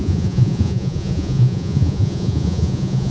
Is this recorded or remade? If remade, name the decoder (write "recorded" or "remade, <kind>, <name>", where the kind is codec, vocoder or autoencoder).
remade, vocoder, Vocos